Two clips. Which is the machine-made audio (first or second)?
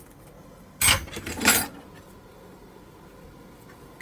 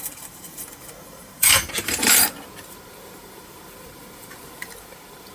second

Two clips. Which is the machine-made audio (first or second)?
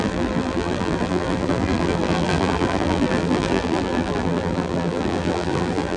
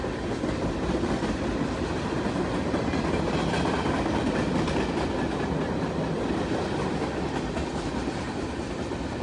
first